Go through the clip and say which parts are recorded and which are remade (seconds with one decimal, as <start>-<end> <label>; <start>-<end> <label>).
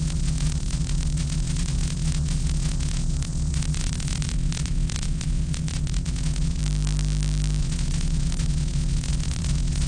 0.0-6.6 remade; 6.6-7.6 recorded; 7.6-9.9 remade